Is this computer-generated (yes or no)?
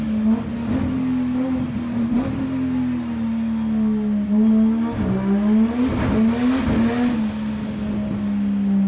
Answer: no